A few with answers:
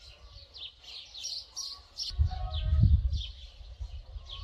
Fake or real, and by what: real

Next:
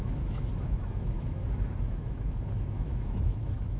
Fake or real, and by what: fake, autoencoder, DAC-VAE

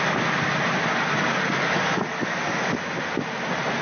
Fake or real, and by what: real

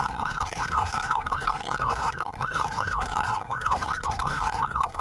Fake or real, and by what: fake, codec, SNAC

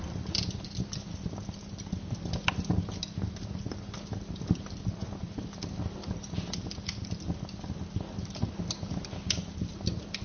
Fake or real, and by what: real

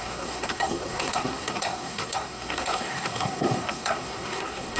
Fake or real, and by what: fake, codec, SNAC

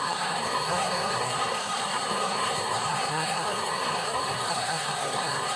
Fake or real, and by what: fake, codec, SNAC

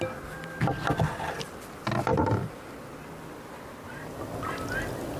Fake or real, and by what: real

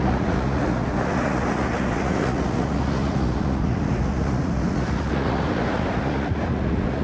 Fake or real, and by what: fake, vocoder, Vocos